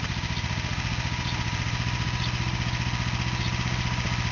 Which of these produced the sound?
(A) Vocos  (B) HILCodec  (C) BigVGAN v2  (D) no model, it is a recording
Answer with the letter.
D